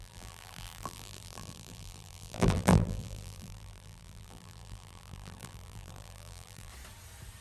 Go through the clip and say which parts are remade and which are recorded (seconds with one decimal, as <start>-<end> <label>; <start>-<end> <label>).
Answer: 0.0-6.7 remade; 6.7-7.4 recorded